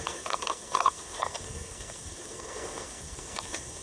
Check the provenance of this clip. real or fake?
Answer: fake